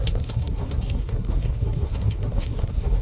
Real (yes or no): no